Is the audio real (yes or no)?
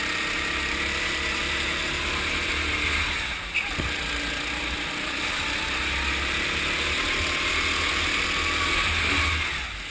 yes